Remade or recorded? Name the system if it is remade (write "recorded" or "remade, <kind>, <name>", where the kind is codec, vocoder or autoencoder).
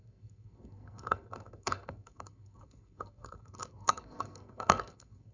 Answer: remade, codec, SNAC